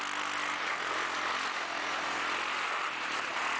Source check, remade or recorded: recorded